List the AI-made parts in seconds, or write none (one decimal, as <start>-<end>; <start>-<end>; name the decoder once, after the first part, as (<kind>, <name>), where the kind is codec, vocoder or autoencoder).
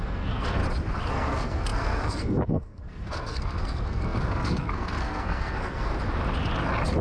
0.0-0.6 (codec, SNAC); 1.1-5.9